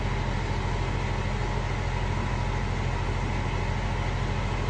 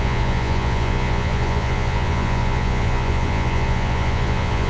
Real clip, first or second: first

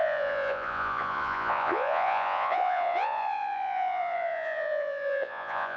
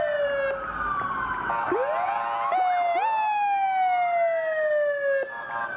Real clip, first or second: second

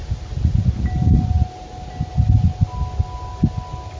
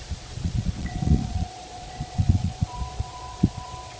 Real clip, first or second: first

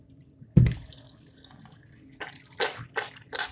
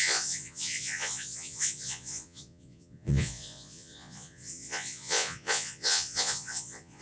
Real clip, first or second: first